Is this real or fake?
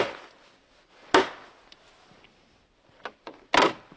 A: real